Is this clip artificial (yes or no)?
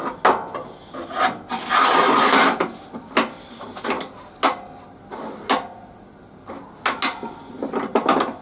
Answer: no